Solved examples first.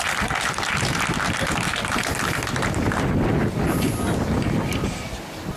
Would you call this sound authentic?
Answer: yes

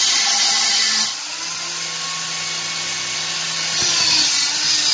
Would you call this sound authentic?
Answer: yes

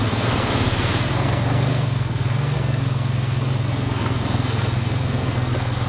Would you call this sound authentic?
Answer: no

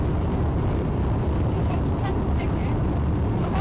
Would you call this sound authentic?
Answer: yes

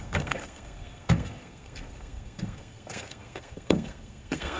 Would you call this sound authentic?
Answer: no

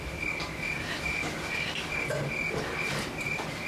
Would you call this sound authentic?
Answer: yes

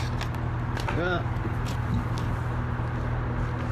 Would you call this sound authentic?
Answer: yes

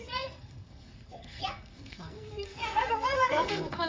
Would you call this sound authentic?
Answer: no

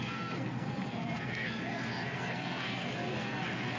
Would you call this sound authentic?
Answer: no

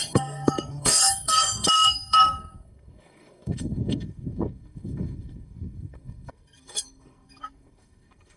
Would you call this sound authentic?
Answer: no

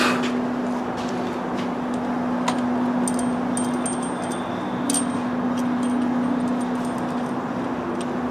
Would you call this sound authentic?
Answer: yes